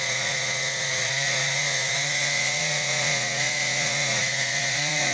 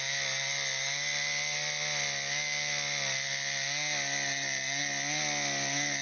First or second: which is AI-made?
first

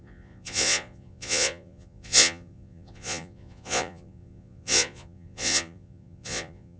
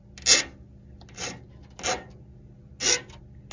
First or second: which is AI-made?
first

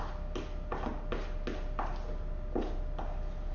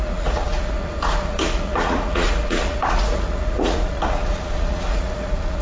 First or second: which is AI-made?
second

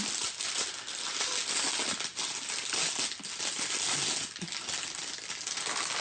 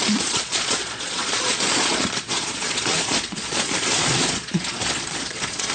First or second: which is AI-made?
second